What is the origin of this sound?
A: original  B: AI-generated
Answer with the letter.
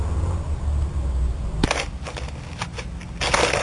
A